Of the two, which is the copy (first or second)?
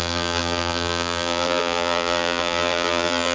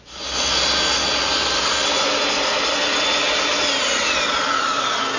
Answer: first